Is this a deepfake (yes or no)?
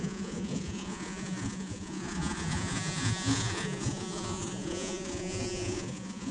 yes